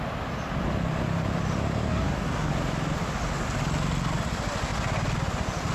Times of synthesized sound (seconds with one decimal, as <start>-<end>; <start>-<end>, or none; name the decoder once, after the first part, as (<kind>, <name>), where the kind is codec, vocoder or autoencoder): 1.8-2.5 (codec, DAC)